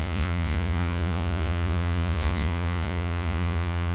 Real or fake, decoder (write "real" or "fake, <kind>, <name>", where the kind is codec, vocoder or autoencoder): fake, vocoder, Vocos